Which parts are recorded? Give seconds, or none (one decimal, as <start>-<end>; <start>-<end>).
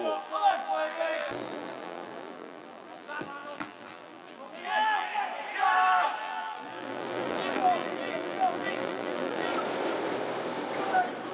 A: 5.1-6.2; 9.5-11.3